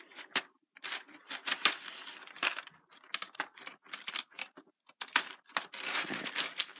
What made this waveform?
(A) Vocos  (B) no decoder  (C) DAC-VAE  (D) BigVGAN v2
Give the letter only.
B